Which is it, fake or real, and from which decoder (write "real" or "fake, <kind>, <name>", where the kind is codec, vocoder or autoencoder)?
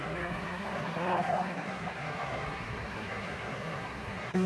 fake, codec, SNAC